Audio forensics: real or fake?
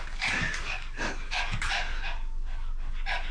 fake